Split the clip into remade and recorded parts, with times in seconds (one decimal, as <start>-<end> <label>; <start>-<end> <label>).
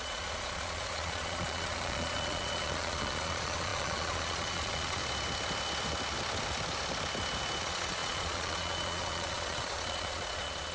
0.0-5.0 remade; 5.0-7.6 recorded; 7.6-10.7 remade